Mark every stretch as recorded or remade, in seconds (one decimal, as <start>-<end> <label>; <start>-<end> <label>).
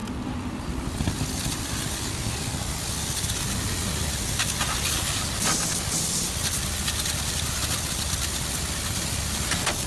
0.0-9.9 recorded